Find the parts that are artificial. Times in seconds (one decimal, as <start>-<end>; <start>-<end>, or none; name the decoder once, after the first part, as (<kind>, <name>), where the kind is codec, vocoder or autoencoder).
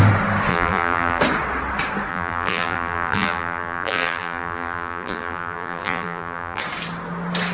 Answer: 0.5-1.2 (vocoder, BigVGAN v2); 2.1-6.6